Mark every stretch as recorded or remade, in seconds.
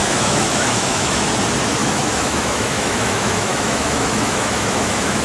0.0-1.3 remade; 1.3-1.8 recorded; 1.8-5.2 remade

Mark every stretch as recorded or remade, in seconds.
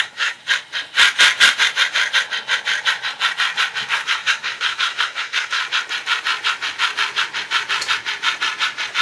0.0-0.4 remade; 0.4-3.9 recorded; 3.9-5.6 remade; 5.6-9.0 recorded